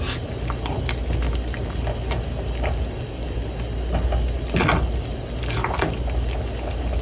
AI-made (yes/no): no